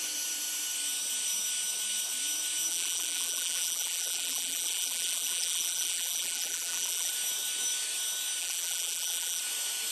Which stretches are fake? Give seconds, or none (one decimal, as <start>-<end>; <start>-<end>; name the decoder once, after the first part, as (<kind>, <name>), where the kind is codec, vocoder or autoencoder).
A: 2.7-7.1 (vocoder, BigVGAN v2); 8.4-9.4